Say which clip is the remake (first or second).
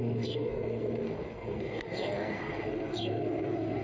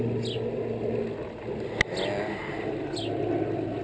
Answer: first